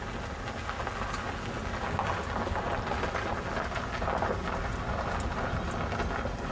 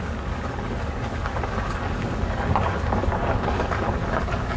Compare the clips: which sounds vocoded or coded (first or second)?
second